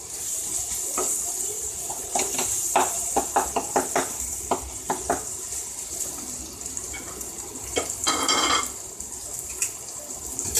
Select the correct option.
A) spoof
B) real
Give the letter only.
B